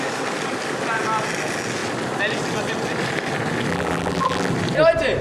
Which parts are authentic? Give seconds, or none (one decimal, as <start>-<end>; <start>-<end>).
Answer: 0.0-3.7; 4.5-5.2